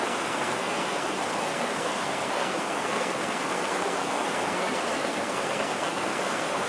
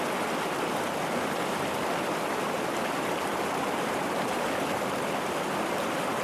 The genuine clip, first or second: second